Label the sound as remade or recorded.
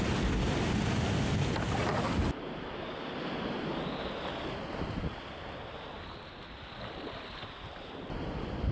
recorded